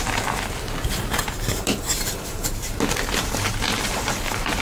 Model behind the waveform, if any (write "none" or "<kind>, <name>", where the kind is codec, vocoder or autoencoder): vocoder, BigVGAN v2